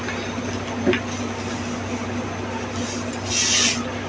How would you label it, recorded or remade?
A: recorded